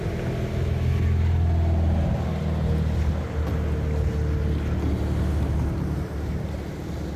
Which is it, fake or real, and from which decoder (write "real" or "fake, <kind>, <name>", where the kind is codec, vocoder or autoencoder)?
real